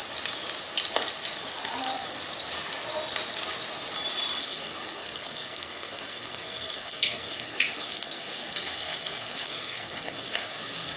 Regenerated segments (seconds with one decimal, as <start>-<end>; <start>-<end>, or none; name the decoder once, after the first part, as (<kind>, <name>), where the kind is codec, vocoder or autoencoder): 4.4-11.0 (codec, SNAC)